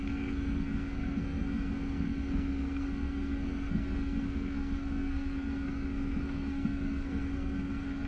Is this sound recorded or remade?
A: remade